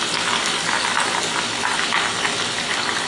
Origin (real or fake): real